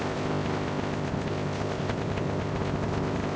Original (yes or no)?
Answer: no